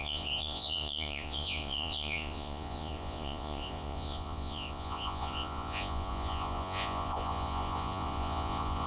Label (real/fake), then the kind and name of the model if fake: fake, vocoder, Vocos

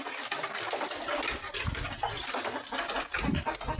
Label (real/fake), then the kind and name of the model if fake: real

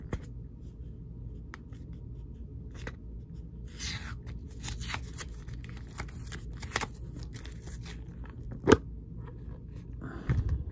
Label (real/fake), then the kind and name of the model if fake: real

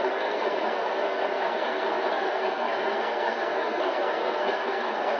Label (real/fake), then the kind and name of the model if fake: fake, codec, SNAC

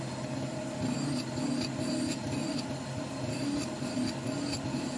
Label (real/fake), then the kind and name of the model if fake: real